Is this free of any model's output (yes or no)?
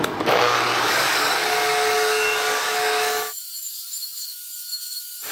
no